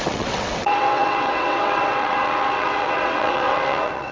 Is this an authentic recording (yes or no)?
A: no